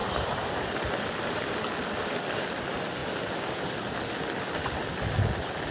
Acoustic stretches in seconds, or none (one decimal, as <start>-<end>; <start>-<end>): 3.0-5.7